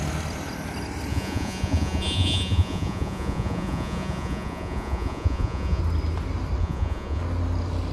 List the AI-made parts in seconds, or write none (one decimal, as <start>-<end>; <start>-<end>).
1.1-5.8; 6.6-7.2